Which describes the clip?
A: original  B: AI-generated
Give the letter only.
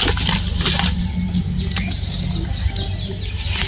A